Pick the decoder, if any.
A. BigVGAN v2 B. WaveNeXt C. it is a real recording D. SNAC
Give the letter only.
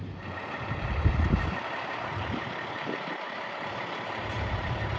A